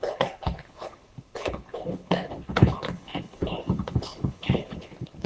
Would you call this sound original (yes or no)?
no